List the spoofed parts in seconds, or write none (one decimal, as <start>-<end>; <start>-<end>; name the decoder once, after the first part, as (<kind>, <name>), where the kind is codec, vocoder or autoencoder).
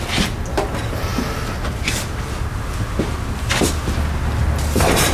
none